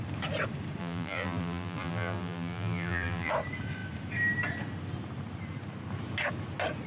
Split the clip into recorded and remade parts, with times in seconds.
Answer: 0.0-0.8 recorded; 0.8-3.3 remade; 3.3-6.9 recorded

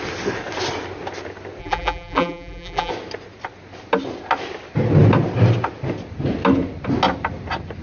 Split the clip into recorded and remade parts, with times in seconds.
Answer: 0.0-1.6 recorded; 1.6-2.9 remade; 2.9-7.8 recorded

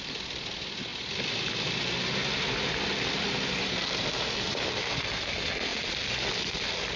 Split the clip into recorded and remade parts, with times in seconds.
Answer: 0.0-0.9 recorded; 0.9-5.1 remade; 5.1-7.0 recorded

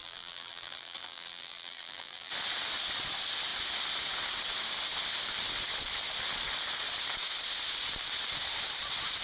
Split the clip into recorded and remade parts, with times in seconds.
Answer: 0.0-2.3 remade; 2.3-9.2 recorded